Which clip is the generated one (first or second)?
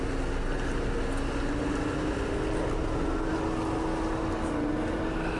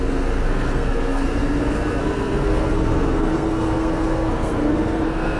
second